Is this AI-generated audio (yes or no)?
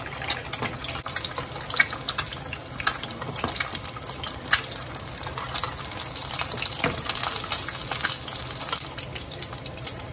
no